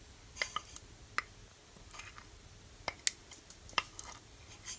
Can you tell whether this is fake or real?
real